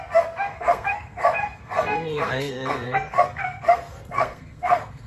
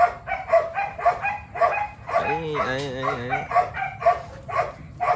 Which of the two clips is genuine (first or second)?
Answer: second